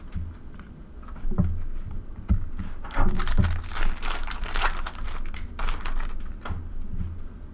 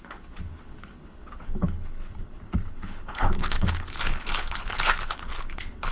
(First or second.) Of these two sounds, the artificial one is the second